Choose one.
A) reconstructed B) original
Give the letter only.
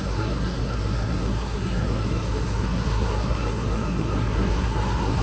A